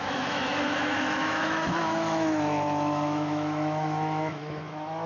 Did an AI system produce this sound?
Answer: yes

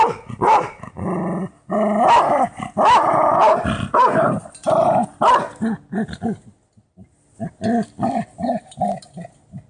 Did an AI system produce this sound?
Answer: no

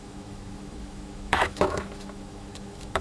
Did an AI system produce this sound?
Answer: yes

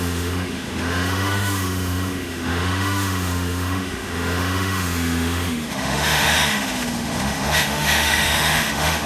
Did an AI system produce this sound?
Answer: yes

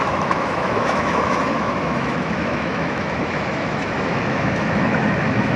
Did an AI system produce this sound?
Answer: yes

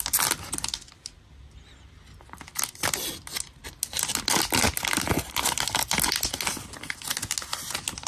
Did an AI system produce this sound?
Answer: no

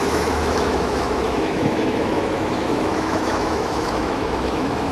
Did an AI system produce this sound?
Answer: yes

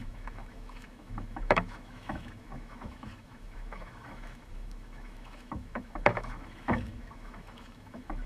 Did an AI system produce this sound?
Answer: yes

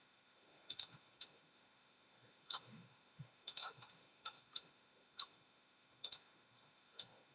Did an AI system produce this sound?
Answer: yes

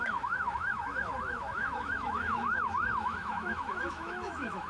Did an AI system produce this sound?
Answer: yes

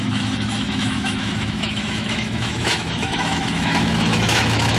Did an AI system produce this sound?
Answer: yes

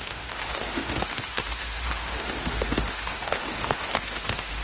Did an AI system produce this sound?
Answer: yes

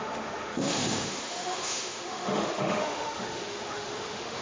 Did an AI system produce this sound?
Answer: yes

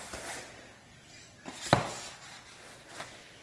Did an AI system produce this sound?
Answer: no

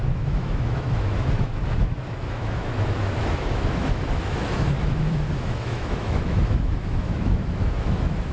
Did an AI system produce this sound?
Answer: yes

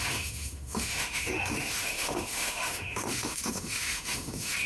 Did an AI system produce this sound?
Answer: yes